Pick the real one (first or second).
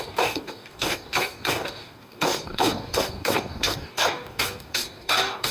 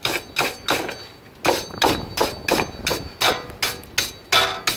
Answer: second